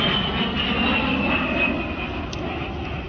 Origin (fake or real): real